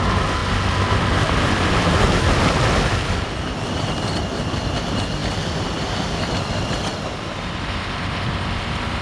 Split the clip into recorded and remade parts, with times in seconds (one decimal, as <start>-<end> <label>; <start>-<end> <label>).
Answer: 0.0-9.0 recorded